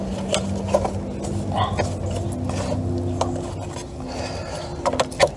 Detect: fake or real real